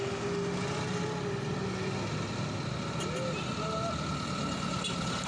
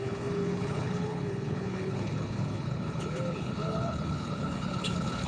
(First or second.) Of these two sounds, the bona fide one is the first